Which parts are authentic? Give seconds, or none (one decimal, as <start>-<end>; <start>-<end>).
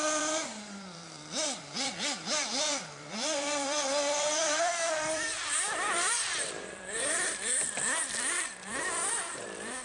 none